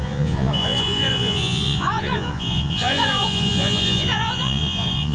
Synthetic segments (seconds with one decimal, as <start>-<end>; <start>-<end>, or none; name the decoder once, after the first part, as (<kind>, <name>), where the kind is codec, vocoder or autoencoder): 0.0-5.1 (vocoder, Vocos)